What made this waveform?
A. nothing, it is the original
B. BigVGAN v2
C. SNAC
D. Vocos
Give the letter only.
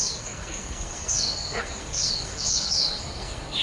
C